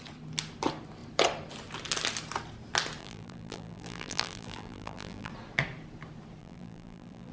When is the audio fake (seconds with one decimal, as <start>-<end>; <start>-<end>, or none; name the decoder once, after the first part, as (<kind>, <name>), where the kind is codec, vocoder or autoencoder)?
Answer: 3.0-5.3 (vocoder, BigVGAN v2); 6.4-7.3